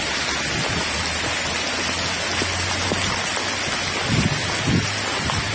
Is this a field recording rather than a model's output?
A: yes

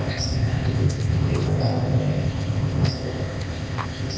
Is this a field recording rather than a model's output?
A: no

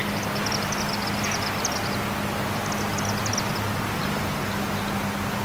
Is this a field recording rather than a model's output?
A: yes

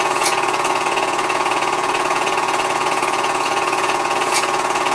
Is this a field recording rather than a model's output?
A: no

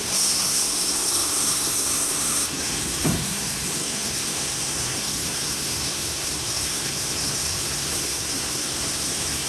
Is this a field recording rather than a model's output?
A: no